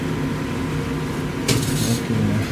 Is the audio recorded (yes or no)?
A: yes